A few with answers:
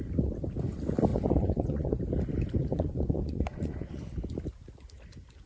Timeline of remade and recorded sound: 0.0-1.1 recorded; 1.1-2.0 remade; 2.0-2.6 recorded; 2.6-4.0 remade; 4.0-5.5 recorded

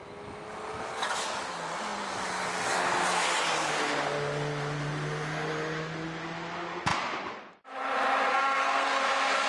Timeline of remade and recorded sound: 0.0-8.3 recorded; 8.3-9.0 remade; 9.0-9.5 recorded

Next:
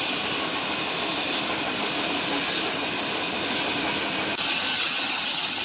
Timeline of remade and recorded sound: 0.0-4.7 recorded; 4.7-5.6 remade

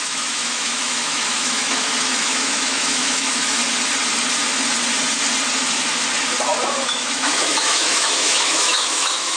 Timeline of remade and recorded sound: 0.0-3.6 remade; 3.6-6.8 recorded; 6.8-9.4 remade

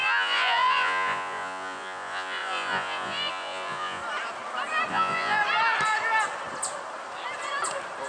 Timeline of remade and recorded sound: 0.0-4.0 remade; 4.0-4.9 recorded; 4.9-5.4 remade; 5.4-8.1 recorded

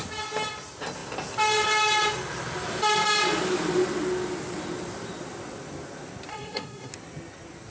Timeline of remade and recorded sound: 0.0-6.3 recorded; 6.3-6.9 remade; 6.9-7.7 recorded